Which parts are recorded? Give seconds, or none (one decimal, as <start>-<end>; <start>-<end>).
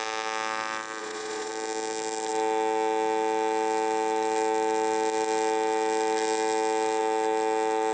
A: 0.0-1.0; 1.5-7.9